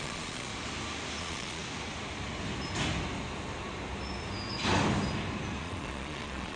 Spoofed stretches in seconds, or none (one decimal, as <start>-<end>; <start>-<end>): 0.0-0.5; 1.2-1.6; 5.6-6.6